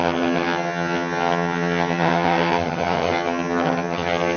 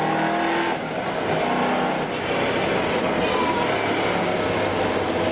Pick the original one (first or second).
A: second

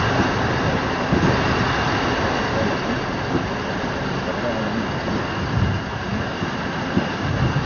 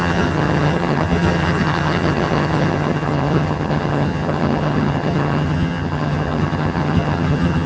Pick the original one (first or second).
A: first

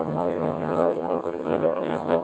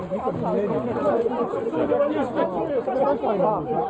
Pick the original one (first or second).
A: second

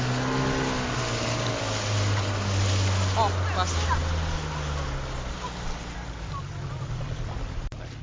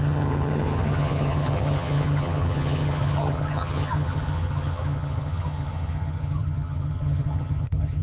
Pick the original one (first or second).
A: first